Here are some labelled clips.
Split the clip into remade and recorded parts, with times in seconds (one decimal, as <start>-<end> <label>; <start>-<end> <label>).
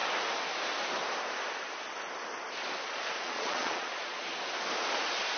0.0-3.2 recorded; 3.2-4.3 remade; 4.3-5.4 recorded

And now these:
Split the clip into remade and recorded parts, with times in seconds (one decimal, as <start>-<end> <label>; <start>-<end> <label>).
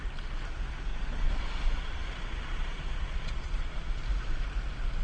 0.0-0.9 recorded; 0.9-3.9 remade; 3.9-5.0 recorded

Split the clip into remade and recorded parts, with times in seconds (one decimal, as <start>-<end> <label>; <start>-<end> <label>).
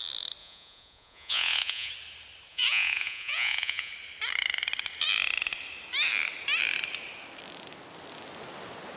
0.0-0.4 recorded; 0.4-1.9 remade; 1.9-2.5 recorded; 2.5-3.9 remade; 3.9-9.0 recorded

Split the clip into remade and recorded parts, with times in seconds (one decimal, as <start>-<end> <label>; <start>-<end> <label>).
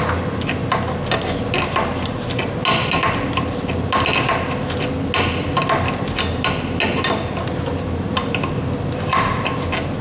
0.0-10.0 recorded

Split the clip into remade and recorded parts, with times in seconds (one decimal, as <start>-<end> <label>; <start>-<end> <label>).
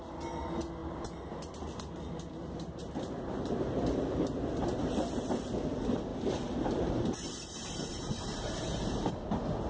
0.0-0.8 recorded; 0.8-1.4 remade; 1.4-2.4 recorded; 2.4-3.9 remade; 3.9-6.1 recorded; 6.1-9.1 remade; 9.1-9.7 recorded